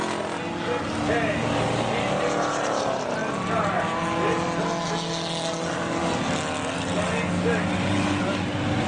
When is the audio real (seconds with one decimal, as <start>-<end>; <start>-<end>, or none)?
0.0-8.9